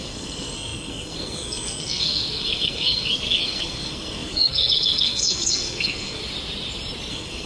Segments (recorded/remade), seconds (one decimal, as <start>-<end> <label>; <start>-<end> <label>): 0.0-6.2 remade; 6.2-7.1 recorded; 7.1-7.5 remade